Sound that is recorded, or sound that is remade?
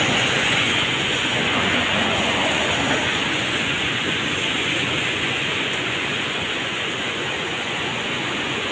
remade